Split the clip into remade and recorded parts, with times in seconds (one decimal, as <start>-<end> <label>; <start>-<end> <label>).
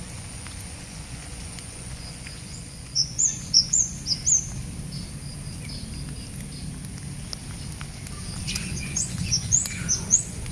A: 0.0-3.9 remade; 3.9-8.4 recorded; 8.4-10.5 remade